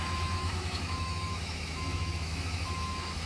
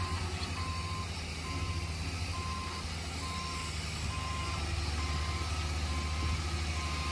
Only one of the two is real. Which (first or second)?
second